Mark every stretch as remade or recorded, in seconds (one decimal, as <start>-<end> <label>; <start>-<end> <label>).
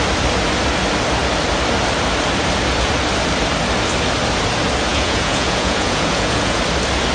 0.0-4.9 recorded; 4.9-6.6 remade; 6.6-7.1 recorded